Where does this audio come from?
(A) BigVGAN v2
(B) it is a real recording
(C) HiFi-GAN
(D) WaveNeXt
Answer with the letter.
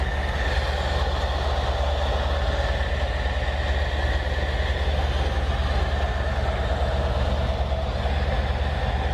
B